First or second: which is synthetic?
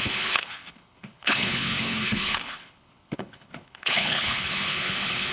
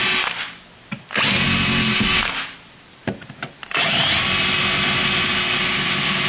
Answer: first